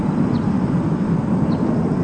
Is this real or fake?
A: real